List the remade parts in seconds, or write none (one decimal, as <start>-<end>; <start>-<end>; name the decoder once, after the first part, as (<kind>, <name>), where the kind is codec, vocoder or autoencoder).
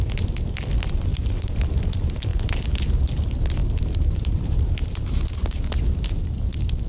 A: 1.1-1.6 (vocoder, BigVGAN v2); 3.6-6.0